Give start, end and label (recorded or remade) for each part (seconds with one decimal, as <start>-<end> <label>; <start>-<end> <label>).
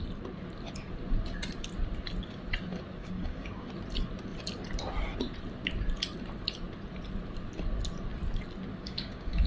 0.0-3.0 recorded; 3.0-3.7 remade; 3.7-8.7 recorded; 8.7-9.5 remade